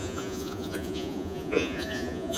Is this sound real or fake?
fake